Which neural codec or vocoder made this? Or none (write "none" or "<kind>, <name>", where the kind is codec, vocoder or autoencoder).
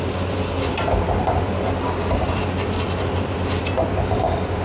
vocoder, BigVGAN v2